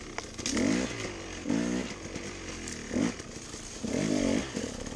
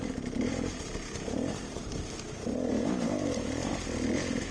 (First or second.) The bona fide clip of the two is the first